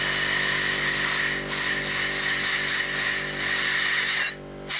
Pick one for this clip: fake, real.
real